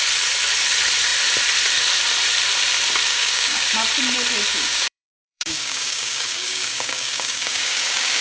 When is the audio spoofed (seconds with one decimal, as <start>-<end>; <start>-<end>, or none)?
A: 3.1-3.7; 4.5-8.2